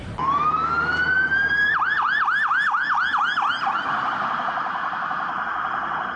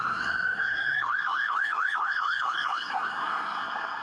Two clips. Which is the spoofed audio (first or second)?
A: second